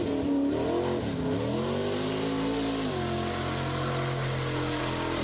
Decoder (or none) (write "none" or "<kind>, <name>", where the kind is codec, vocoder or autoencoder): none